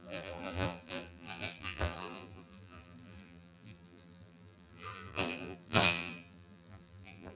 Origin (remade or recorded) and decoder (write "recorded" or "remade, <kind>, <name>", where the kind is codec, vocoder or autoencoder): remade, vocoder, BigVGAN v2